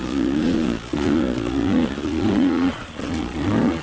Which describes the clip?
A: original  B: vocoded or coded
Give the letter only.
B